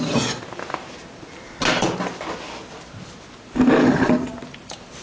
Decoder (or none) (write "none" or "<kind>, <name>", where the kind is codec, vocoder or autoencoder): none